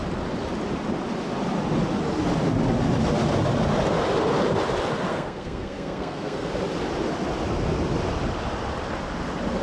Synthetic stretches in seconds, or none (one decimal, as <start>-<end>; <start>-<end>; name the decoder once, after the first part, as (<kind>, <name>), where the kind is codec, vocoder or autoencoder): 5.1-6.5 (codec, SNAC)